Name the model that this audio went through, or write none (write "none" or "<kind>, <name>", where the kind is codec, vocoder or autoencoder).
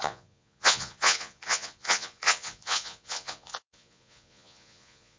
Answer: vocoder, Vocos